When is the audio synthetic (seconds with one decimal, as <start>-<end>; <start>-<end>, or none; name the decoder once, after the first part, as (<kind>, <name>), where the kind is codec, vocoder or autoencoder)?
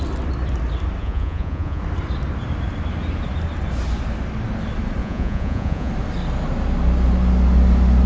1.0-1.8 (vocoder, Vocos); 5.0-5.9